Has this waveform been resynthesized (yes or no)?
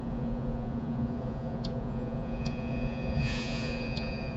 yes